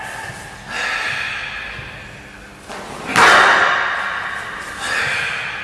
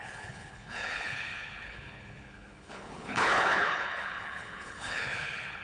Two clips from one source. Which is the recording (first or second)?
first